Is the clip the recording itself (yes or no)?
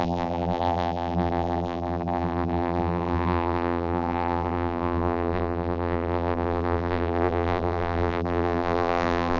no